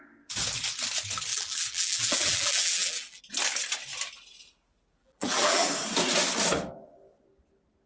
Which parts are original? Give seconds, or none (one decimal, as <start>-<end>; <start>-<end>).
0.0-1.3; 3.2-5.0; 5.7-7.9